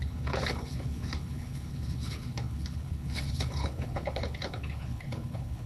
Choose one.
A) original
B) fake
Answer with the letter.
B